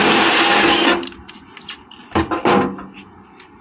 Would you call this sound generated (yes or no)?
no